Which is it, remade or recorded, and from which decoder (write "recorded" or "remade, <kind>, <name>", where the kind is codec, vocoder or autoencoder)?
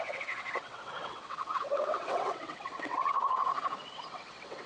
remade, vocoder, WaveNeXt